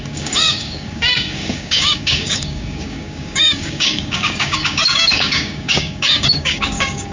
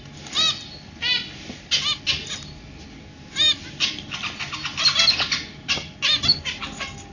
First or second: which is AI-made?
first